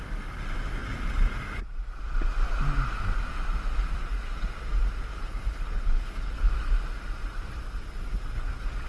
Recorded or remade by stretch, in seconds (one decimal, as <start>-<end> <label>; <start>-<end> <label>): 0.0-5.1 recorded; 5.1-6.5 remade; 6.5-8.9 recorded